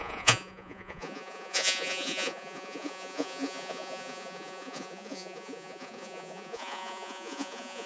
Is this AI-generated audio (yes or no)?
yes